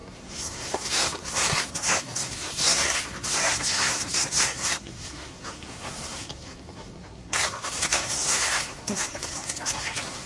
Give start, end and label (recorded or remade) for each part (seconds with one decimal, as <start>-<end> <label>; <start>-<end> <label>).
0.0-10.3 remade